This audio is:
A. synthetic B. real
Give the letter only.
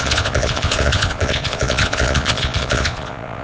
A